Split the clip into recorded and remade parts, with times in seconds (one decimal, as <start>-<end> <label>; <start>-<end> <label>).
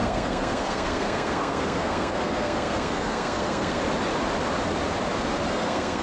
0.0-3.8 remade; 3.8-5.5 recorded; 5.5-6.0 remade